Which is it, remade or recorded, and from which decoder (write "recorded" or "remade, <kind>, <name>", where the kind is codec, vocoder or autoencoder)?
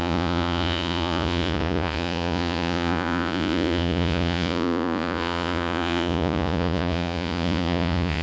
remade, vocoder, Vocos